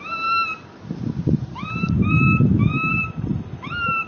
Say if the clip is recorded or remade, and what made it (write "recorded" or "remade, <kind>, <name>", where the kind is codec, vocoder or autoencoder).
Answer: recorded